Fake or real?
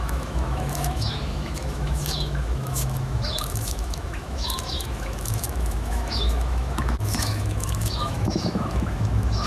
fake